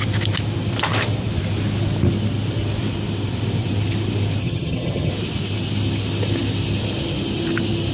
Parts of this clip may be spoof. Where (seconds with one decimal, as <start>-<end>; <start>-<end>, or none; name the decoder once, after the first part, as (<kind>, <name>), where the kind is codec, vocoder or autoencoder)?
4.4-5.1 (vocoder, HiFi-GAN)